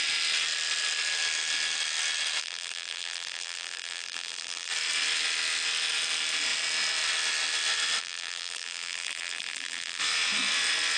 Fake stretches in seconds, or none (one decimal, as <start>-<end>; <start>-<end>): 2.4-4.7; 8.0-10.0